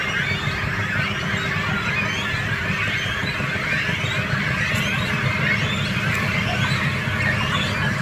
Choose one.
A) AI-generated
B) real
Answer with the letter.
B